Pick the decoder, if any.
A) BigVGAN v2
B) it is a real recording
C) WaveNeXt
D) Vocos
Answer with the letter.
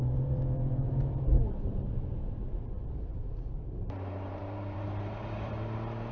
A